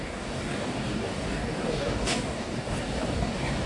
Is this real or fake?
fake